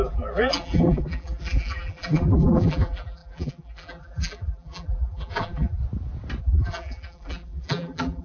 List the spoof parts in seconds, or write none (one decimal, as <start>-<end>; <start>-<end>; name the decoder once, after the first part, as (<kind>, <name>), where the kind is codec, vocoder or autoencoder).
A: 0.0-5.8 (vocoder, BigVGAN v2); 6.4-8.2